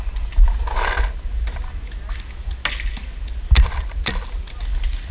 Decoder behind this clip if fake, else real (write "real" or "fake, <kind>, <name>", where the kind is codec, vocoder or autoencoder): real